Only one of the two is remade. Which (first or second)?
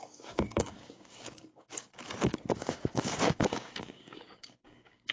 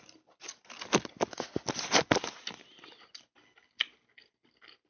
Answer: first